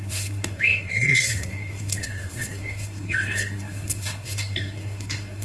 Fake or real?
fake